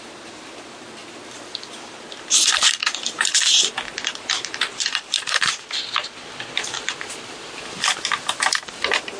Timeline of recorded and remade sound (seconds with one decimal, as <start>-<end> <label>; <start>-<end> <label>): 0.0-9.2 recorded